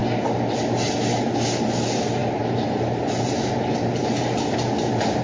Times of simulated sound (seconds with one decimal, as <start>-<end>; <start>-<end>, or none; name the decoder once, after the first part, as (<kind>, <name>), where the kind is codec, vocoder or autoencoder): 2.2-3.5 (vocoder, BigVGAN v2); 4.0-5.2